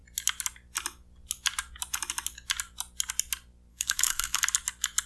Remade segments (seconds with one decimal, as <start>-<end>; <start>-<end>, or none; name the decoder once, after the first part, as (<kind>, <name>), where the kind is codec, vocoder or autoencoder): 3.7-4.4 (codec, SNAC)